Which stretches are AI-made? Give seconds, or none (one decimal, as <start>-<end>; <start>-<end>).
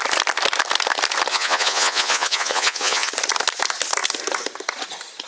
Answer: 1.3-3.1